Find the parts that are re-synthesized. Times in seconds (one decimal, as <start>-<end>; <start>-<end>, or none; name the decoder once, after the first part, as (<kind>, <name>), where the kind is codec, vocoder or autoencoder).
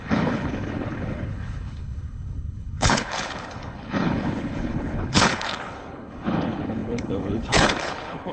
0.0-8.3 (codec, HILCodec)